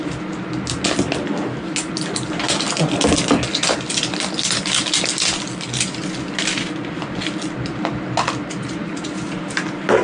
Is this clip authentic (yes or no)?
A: yes